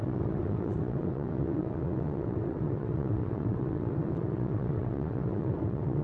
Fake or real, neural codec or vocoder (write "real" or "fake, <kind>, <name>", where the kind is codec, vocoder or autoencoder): fake, vocoder, WaveNeXt